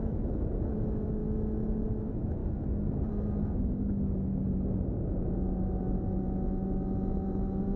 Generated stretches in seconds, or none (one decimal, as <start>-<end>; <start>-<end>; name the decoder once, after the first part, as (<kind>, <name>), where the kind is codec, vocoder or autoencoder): 0.0-1.2 (autoencoder, DAC-VAE); 2.0-2.4; 3.1-4.3; 5.8-7.8